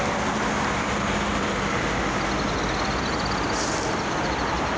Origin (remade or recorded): recorded